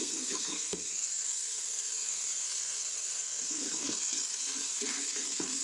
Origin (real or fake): fake